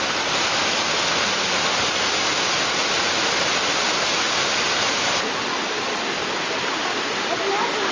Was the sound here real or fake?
real